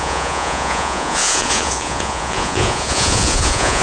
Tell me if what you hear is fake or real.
fake